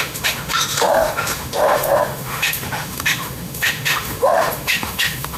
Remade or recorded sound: remade